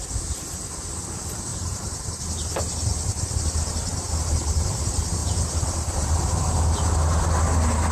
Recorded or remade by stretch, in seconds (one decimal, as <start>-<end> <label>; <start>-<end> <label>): 0.0-1.5 recorded; 1.5-2.2 remade; 2.2-3.9 recorded; 3.9-4.8 remade; 4.8-5.2 recorded; 5.2-6.4 remade; 6.4-7.9 recorded